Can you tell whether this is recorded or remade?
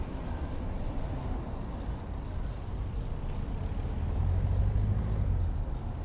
recorded